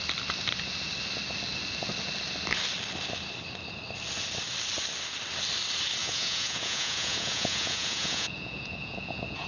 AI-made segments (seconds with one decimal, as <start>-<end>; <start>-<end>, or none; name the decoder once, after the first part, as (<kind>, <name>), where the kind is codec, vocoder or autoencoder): 6.0-9.5 (vocoder, Vocos)